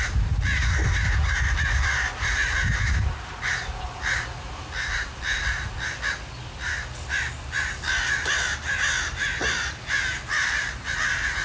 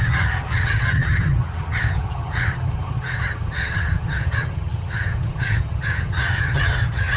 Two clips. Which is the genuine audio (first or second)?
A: first